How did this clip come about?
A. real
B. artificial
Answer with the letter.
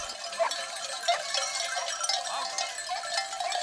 A